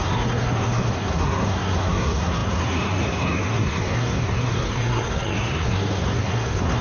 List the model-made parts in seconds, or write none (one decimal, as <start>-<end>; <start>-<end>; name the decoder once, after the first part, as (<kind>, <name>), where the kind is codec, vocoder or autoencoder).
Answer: 0.0-6.8 (codec, SNAC)